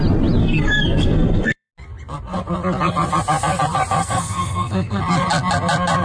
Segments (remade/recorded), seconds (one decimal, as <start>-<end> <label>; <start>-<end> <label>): 0.0-0.4 recorded; 0.4-1.7 remade; 1.7-4.0 recorded; 4.0-5.0 remade; 5.0-6.0 recorded